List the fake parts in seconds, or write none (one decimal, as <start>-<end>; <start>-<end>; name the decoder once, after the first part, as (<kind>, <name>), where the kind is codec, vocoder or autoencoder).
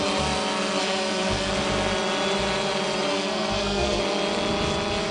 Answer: 0.8-1.5 (codec, SNAC); 3.1-4.0